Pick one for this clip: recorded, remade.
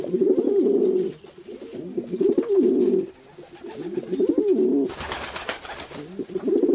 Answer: recorded